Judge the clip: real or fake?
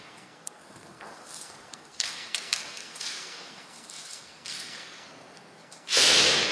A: fake